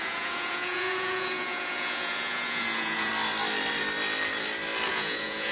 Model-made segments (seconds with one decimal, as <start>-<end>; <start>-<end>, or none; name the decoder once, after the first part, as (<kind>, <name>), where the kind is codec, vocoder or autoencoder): 0.0-3.1 (vocoder, Vocos); 4.9-5.5